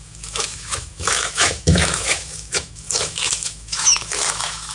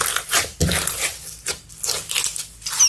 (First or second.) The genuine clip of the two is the second